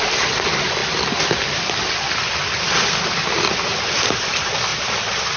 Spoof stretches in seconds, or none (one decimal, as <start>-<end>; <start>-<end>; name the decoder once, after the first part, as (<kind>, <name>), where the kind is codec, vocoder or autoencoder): none